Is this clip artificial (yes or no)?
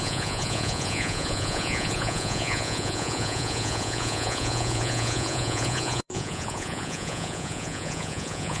yes